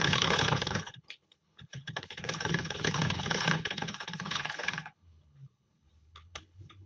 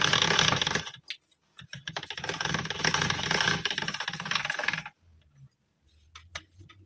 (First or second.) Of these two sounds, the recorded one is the second